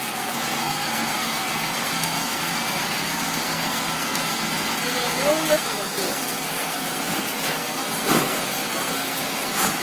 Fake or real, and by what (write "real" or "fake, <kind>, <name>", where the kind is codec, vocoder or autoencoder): fake, codec, SNAC